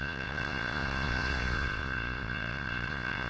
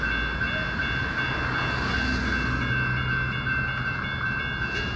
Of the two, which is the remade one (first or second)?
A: first